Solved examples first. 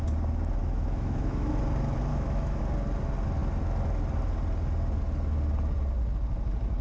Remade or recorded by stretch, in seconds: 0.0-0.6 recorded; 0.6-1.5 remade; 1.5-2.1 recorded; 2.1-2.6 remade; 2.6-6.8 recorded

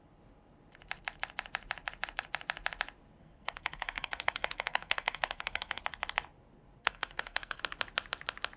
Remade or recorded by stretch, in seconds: 0.0-3.2 recorded; 3.2-5.8 remade; 5.8-6.8 recorded; 6.8-7.6 remade; 7.6-8.6 recorded

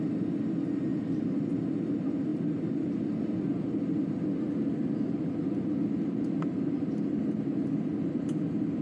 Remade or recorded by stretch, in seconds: 0.0-8.8 recorded

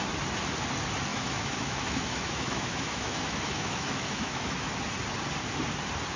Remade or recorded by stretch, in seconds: 0.0-1.1 recorded; 1.1-4.7 remade; 4.7-6.2 recorded

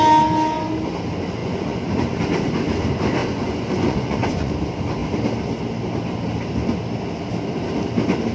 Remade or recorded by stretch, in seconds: 0.0-1.4 recorded; 1.4-1.9 remade; 1.9-3.2 recorded; 3.2-4.5 remade; 4.5-8.3 recorded

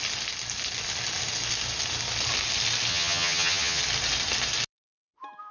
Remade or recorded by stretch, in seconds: 0.0-2.9 recorded; 2.9-3.8 remade; 3.8-5.5 recorded